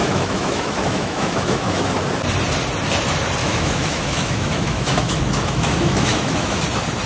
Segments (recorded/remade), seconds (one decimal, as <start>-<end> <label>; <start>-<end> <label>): 0.0-1.9 remade; 1.9-3.4 recorded; 3.4-6.6 remade; 6.6-7.1 recorded